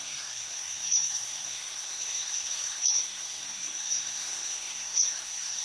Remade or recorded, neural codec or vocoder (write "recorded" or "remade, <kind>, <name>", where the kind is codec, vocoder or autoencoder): remade, codec, SNAC